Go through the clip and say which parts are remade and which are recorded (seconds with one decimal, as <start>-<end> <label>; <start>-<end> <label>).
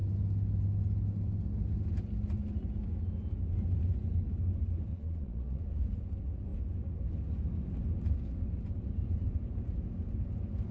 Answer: 0.0-4.9 recorded; 4.9-5.6 remade; 5.6-10.7 recorded